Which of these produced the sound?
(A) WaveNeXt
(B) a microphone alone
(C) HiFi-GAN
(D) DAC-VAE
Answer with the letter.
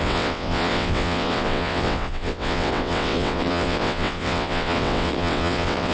A